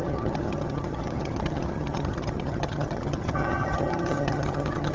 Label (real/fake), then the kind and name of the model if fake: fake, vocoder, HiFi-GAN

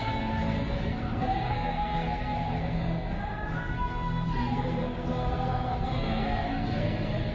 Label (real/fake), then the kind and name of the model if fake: fake, codec, SNAC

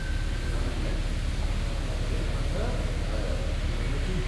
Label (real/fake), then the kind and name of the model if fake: real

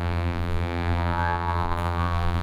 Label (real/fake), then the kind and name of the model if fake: fake, vocoder, BigVGAN v2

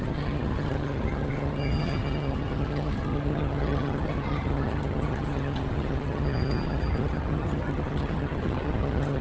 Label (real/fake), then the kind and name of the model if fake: fake, vocoder, HiFi-GAN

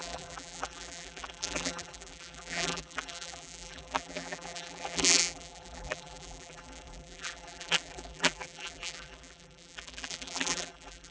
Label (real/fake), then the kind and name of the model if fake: fake, vocoder, BigVGAN v2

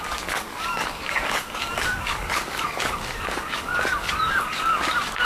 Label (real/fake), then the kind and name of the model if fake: fake, codec, DAC